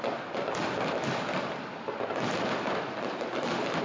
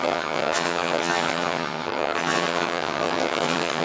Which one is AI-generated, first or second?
second